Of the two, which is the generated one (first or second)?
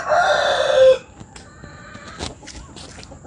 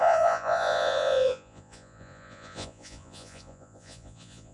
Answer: second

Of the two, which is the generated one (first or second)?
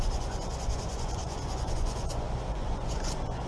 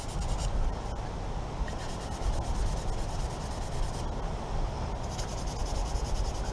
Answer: first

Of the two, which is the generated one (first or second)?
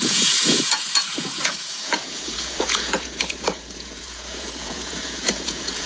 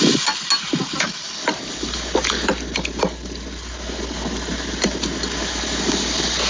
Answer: first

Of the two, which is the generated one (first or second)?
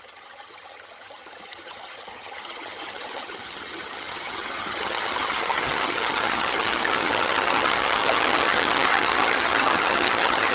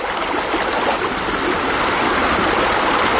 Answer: first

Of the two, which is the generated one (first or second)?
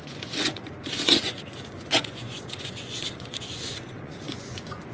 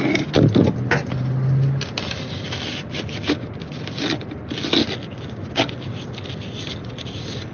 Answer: first